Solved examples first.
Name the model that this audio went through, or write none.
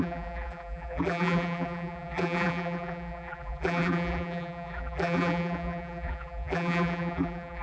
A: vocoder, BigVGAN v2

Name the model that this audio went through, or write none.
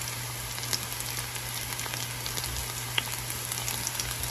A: none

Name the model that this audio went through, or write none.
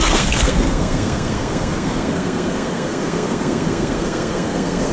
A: codec, SNAC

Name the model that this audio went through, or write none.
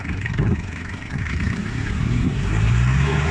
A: codec, SNAC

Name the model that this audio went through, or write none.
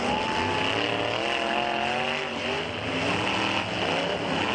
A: none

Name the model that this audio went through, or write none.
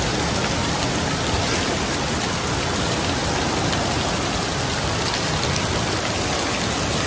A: none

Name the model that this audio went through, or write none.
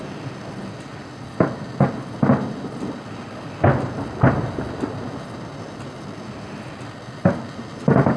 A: none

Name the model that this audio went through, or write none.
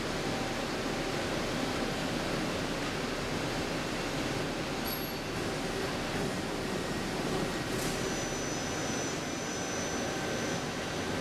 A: none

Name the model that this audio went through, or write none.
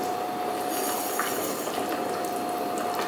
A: none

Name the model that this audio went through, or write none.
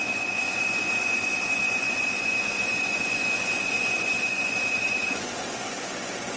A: vocoder, Vocos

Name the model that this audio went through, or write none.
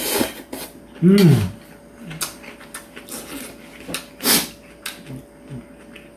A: none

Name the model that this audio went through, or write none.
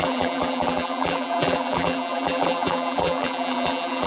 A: vocoder, BigVGAN v2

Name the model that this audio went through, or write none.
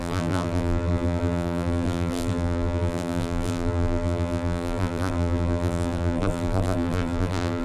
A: vocoder, BigVGAN v2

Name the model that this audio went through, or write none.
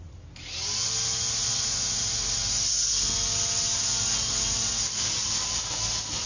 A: none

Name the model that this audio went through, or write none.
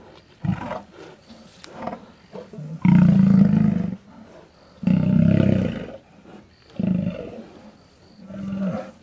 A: none